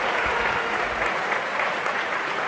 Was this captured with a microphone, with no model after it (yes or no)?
no